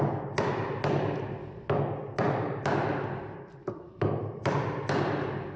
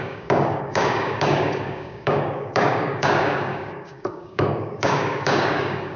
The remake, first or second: second